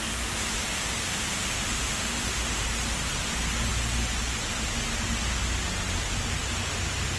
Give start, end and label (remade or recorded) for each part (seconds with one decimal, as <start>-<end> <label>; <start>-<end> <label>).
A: 0.0-1.3 recorded; 1.3-2.6 remade; 2.6-7.2 recorded